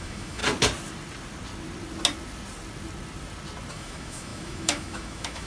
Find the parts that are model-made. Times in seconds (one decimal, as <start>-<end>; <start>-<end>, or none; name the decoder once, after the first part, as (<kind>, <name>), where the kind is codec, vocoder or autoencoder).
0.0-0.4 (autoencoder, DAC-VAE); 3.7-5.5